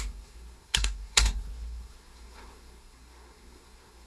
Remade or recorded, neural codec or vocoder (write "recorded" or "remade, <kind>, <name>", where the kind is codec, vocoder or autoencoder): remade, codec, SNAC